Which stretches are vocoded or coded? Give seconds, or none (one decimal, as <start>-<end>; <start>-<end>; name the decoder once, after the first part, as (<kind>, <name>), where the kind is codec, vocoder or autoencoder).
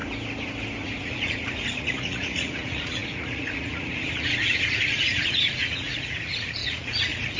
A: 0.8-7.4 (vocoder, Vocos)